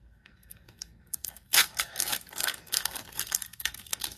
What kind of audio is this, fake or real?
fake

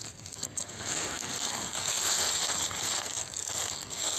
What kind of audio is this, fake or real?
fake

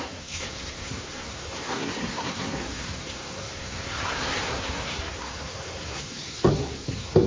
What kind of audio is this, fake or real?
fake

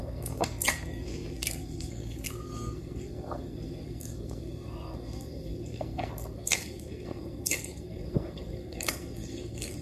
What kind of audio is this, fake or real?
fake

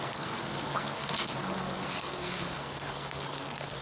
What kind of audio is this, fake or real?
fake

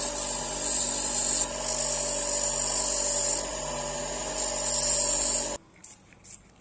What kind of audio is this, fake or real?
real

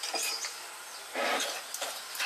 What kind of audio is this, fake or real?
real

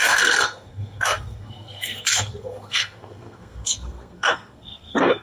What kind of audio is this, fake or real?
fake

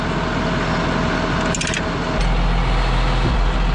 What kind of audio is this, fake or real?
real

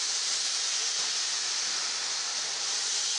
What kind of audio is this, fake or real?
real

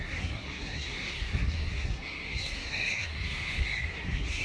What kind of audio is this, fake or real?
fake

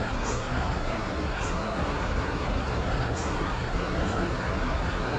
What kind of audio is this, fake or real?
fake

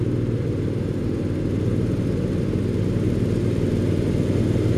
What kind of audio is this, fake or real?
real